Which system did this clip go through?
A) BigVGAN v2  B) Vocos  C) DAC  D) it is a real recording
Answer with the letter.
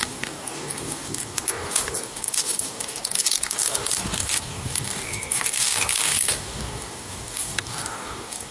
C